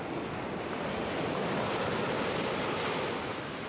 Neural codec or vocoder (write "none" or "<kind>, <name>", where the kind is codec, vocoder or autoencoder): none